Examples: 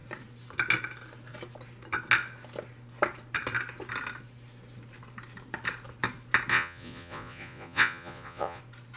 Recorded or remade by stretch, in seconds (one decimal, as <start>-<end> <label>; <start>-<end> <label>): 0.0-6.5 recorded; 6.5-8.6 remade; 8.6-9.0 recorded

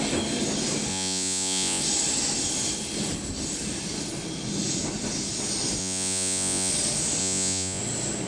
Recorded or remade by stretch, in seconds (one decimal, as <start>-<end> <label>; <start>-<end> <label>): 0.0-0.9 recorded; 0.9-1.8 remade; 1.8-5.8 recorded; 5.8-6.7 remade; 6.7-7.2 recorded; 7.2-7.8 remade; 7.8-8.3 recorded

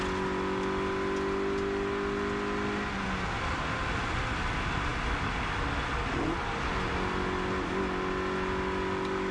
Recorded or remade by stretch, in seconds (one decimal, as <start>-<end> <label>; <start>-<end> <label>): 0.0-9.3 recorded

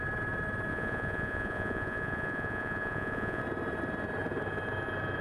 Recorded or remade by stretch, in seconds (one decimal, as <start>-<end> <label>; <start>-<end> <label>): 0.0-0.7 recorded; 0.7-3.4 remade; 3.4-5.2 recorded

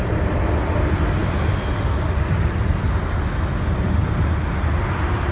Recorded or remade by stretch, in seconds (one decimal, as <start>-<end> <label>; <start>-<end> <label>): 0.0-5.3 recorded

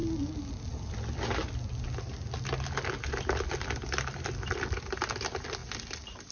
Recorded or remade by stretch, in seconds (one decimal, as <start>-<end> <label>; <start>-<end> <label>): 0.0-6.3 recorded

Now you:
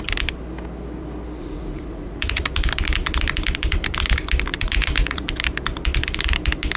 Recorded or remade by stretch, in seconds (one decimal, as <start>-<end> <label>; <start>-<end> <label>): 0.0-1.4 recorded; 1.4-2.5 remade; 2.5-4.5 recorded; 4.5-5.3 remade; 5.3-6.8 recorded